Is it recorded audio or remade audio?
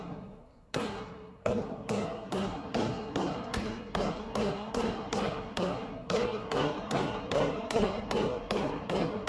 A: remade